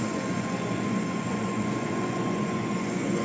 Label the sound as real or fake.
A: fake